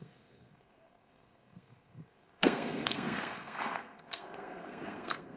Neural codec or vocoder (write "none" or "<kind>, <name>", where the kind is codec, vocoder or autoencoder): codec, SNAC